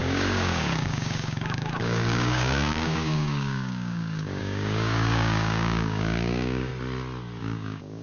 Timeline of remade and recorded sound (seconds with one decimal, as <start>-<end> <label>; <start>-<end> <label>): 0.0-6.7 remade; 6.7-7.4 recorded; 7.4-8.0 remade